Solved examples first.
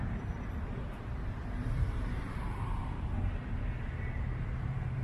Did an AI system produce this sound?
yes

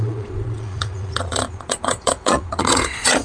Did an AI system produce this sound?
yes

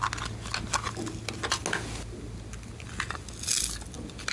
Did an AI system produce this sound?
no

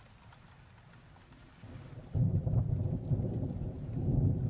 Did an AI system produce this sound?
no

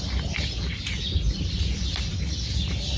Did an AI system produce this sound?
no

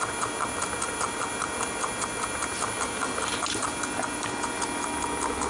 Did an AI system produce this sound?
no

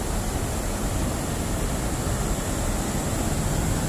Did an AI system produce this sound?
no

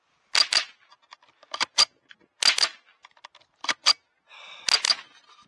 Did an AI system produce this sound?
no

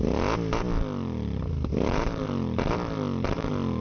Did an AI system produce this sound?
no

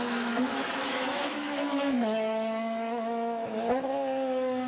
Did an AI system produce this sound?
yes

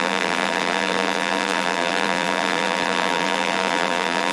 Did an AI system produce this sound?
yes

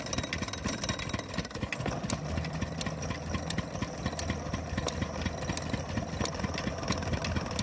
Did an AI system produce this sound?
no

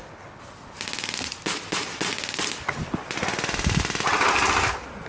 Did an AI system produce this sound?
no